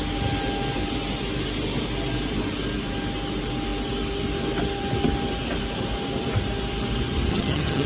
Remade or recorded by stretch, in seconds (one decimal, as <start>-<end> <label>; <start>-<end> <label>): 0.0-7.3 recorded; 7.3-7.9 remade